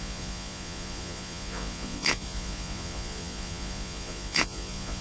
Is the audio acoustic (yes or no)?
no